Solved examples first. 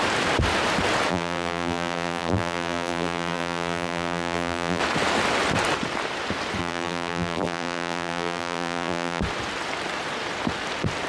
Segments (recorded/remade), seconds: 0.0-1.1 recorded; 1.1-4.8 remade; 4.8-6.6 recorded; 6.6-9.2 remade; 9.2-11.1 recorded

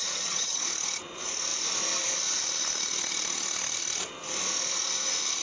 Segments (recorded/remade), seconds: 0.0-0.6 remade; 0.6-5.4 recorded

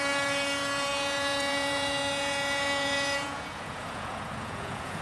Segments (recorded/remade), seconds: 0.0-5.0 remade